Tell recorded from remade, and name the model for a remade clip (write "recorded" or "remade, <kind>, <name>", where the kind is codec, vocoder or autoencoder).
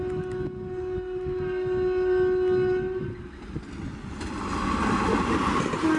recorded